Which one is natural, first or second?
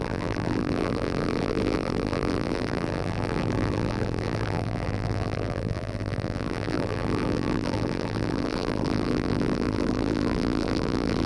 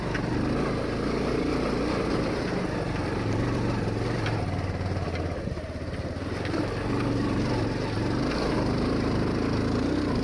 second